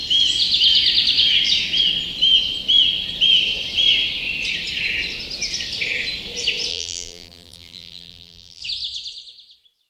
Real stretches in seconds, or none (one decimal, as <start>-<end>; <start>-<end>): 0.0-6.7; 8.6-9.9